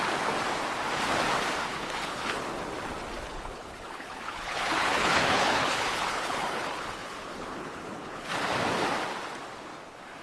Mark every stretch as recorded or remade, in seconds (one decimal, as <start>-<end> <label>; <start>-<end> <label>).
0.0-1.7 recorded; 1.7-2.4 remade; 2.4-3.3 recorded; 3.3-8.3 remade; 8.3-10.2 recorded